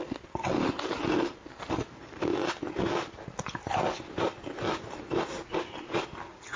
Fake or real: real